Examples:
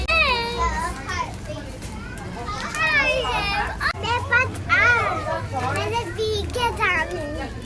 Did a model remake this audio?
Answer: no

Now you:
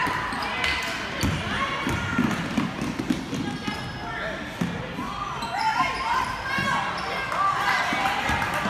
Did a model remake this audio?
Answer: no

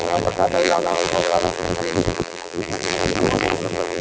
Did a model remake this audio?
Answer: yes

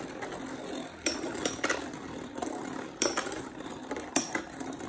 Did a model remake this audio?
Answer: no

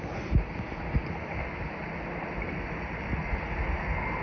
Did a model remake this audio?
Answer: no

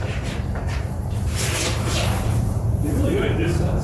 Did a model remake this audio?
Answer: yes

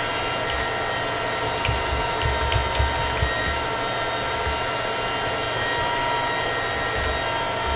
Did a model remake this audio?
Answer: no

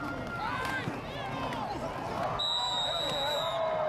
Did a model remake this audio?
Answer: no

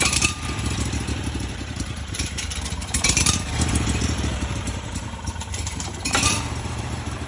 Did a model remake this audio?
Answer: yes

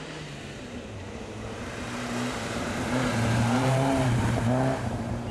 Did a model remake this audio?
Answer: yes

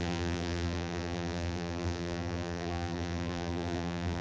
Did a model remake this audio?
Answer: yes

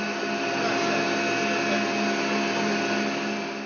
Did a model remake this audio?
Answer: no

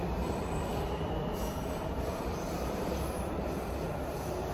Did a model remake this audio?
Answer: yes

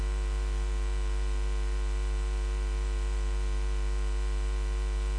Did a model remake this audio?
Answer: no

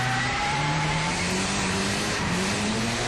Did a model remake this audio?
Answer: yes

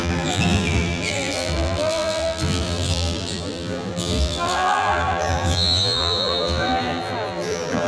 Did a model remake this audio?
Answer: yes